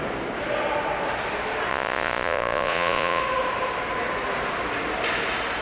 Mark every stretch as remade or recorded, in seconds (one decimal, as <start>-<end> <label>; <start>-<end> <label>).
0.0-1.7 recorded; 1.7-3.2 remade; 3.2-5.6 recorded